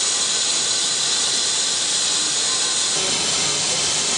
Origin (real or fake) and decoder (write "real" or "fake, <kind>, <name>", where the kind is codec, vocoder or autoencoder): real